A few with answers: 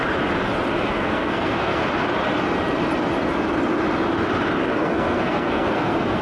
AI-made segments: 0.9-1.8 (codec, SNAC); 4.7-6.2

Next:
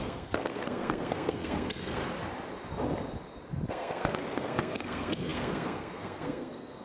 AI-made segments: 0.0-2.0 (codec, SNAC); 3.7-6.8

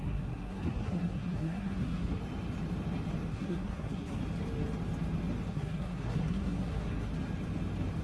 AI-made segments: 0.0-2.2 (codec, SNAC); 3.3-4.2; 5.5-7.1

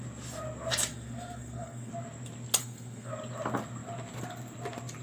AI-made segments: 0.9-1.9 (codec, SNAC); 2.6-3.1

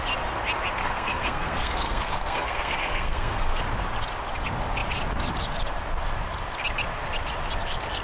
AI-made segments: 0.8-3.6 (codec, SNAC)

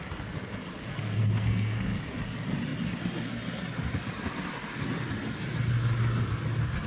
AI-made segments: 0.9-2.0 (codec, SNAC)

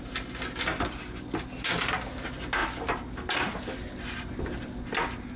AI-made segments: none

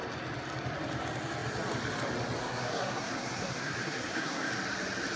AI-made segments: 2.4-4.5 (codec, SNAC)